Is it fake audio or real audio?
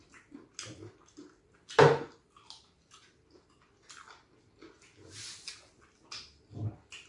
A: real